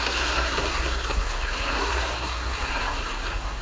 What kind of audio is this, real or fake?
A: fake